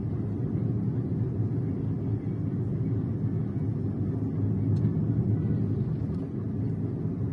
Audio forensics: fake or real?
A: real